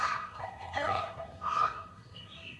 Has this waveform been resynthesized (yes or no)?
yes